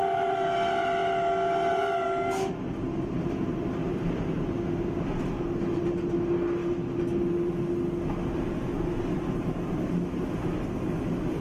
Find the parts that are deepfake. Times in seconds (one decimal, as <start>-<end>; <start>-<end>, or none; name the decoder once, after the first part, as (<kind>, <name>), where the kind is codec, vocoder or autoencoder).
3.8-4.4 (vocoder, BigVGAN v2)